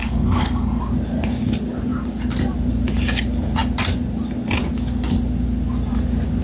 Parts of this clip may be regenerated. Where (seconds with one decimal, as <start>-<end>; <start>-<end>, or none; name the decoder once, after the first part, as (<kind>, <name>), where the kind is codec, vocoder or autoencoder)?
0.0-0.8 (codec, SNAC)